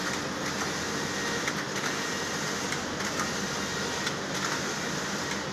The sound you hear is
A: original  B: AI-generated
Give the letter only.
A